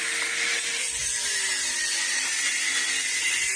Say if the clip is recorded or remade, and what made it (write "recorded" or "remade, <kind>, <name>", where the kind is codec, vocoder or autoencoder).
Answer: recorded